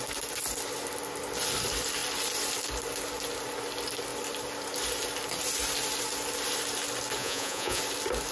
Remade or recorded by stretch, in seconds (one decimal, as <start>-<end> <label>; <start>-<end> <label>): 0.0-7.2 recorded; 7.2-7.8 remade; 7.8-8.3 recorded